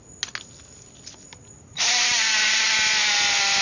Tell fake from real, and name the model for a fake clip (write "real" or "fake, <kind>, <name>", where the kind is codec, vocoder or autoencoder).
real